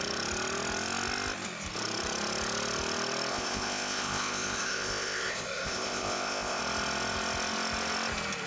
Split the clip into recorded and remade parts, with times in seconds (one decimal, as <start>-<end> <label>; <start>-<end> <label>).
0.0-3.3 recorded; 3.3-6.6 remade; 6.6-8.5 recorded